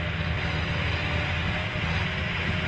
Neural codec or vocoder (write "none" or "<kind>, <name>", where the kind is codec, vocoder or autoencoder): none